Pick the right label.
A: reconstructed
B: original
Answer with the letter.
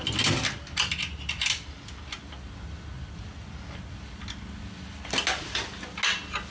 B